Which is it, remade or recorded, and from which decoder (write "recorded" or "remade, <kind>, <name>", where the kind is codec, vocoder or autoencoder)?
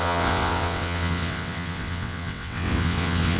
remade, vocoder, WaveNeXt